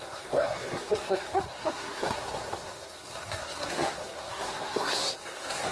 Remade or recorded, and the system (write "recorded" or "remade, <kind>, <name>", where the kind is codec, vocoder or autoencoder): remade, codec, SNAC